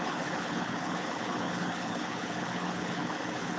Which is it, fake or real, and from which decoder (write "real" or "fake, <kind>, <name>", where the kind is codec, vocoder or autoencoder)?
fake, codec, HILCodec